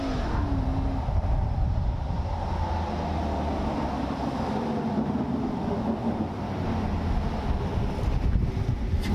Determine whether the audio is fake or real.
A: real